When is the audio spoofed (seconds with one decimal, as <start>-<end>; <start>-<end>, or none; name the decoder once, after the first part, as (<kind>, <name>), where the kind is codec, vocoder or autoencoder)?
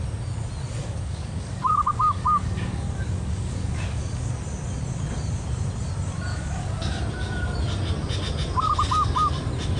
0.8-4.3 (codec, DAC); 6.3-6.9